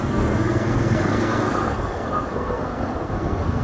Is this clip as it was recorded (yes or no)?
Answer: no